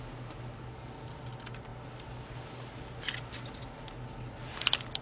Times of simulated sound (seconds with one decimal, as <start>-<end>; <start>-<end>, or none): none